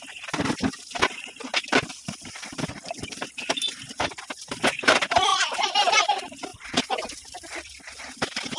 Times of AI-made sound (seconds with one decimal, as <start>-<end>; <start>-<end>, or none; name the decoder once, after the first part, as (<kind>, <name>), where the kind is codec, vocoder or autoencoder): 1.5-3.7 (vocoder, BigVGAN v2); 5.3-5.9; 6.5-7.8